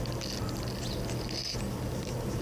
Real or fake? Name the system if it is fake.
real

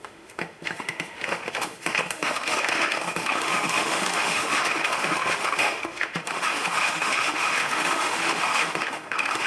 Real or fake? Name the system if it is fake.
fake, autoencoder, DAC-VAE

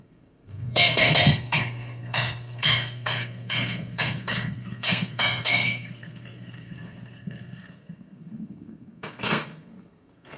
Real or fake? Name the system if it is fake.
fake, codec, SNAC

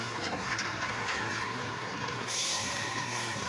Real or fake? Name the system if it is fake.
fake, codec, SNAC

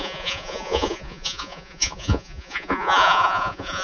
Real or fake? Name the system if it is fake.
fake, vocoder, Vocos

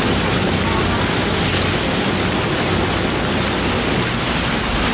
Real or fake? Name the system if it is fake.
real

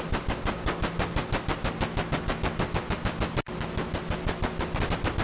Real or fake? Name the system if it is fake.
real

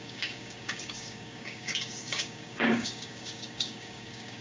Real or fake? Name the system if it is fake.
fake, codec, DAC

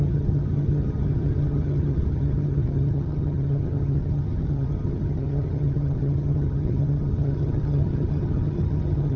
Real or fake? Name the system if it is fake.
fake, vocoder, HiFi-GAN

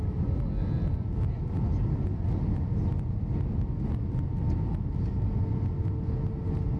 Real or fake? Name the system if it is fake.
real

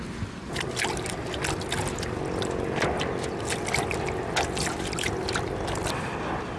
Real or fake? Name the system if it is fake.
real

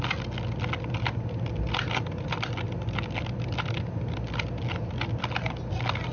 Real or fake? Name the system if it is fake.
real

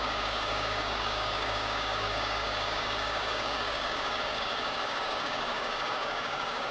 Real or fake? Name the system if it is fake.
fake, codec, DAC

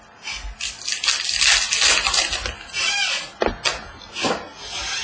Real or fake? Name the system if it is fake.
real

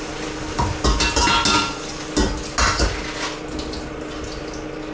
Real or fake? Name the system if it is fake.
real